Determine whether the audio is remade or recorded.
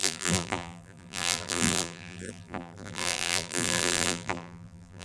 remade